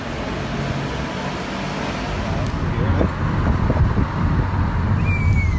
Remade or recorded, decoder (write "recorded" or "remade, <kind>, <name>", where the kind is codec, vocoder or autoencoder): recorded